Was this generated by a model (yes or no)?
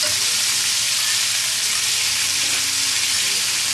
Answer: no